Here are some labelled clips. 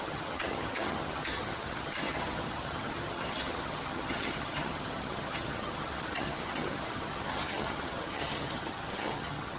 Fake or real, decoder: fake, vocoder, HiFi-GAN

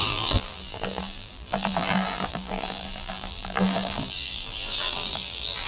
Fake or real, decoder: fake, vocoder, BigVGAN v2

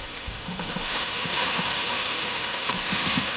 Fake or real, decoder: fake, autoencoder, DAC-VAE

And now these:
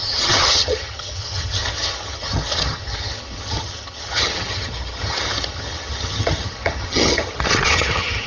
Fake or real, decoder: fake, vocoder, HiFi-GAN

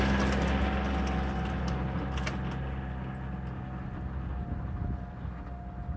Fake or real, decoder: real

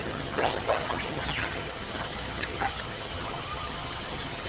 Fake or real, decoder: fake, vocoder, HiFi-GAN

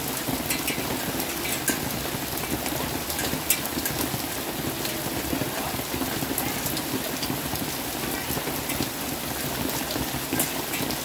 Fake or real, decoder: real